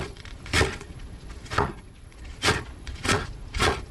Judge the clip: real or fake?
fake